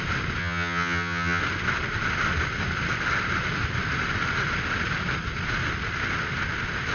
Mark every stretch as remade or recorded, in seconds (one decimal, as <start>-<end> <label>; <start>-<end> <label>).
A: 0.0-0.4 recorded; 0.4-1.4 remade; 1.4-6.9 recorded